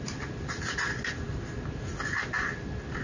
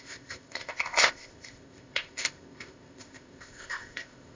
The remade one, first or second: second